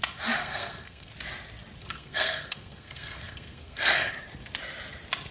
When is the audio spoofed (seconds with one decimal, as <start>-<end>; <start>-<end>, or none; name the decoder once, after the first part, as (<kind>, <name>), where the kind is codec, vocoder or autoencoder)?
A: 0.4-1.1 (codec, SNAC); 1.8-4.1